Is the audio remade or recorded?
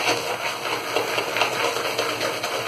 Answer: recorded